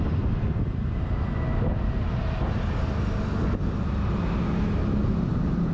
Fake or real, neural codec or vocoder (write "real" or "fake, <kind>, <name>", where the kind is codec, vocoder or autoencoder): real